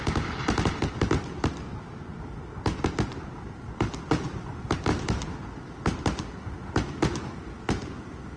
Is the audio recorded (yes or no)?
yes